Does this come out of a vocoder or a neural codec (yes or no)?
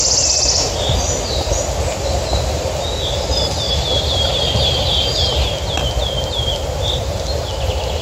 no